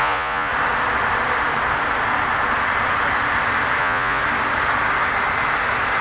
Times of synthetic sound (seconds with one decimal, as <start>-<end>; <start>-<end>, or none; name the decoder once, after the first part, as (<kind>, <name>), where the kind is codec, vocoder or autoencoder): 0.0-0.5 (vocoder, Vocos); 3.8-4.2